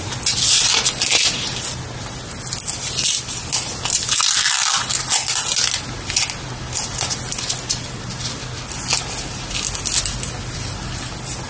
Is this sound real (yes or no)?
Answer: yes